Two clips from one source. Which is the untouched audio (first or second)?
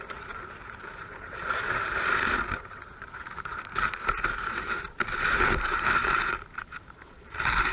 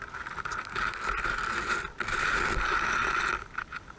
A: second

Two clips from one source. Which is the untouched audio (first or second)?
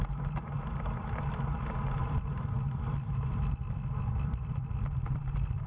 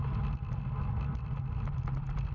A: second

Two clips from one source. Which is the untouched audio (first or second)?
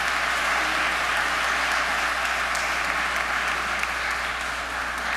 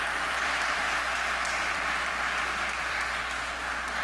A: first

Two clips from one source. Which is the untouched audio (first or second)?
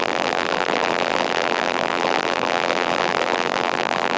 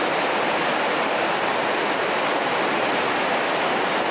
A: second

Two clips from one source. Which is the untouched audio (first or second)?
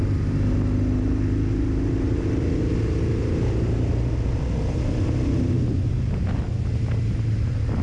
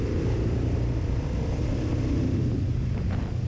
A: first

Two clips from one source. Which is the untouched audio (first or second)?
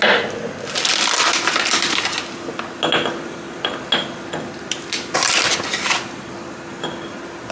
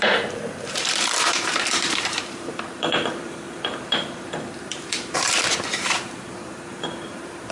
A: first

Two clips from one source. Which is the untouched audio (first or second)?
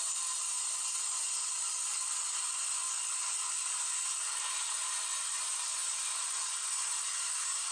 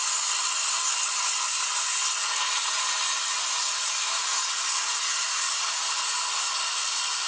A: second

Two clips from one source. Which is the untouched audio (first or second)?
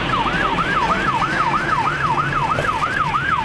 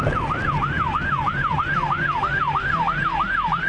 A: second